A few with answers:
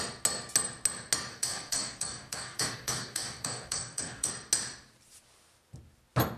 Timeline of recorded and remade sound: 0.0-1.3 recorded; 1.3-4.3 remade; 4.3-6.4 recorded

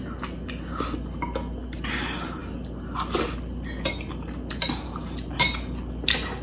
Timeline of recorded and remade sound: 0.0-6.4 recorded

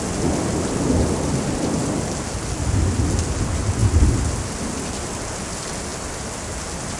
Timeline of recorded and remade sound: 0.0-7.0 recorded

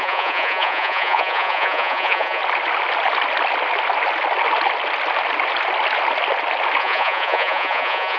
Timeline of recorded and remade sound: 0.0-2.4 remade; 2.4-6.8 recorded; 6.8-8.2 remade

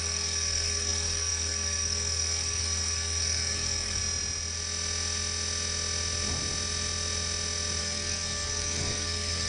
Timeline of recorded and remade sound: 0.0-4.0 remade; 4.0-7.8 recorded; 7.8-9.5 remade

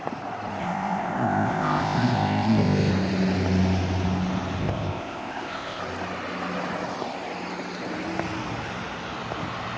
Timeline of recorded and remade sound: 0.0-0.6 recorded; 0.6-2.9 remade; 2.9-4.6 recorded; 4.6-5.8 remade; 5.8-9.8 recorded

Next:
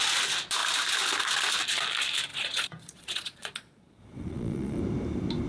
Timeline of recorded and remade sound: 0.0-2.3 recorded; 2.3-4.8 remade; 4.8-5.5 recorded

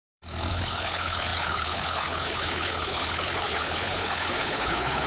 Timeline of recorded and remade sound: 0.0-0.5 recorded; 0.5-5.1 remade